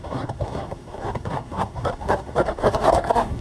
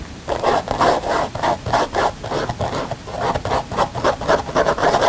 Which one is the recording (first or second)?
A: second